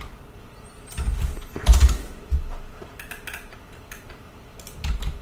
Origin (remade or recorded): recorded